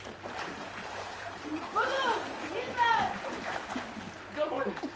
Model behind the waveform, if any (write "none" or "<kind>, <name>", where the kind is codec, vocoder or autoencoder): vocoder, BigVGAN v2